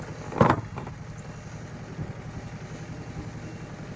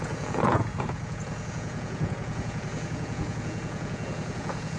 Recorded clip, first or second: first